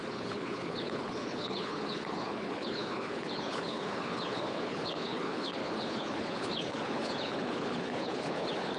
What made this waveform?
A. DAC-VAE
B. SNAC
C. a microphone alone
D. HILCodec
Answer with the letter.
D